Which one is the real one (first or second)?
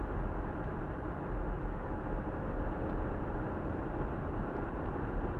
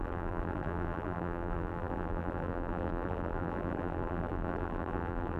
first